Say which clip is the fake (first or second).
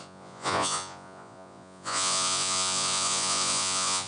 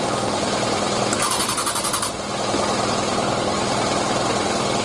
first